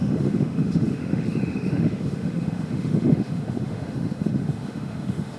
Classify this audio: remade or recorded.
remade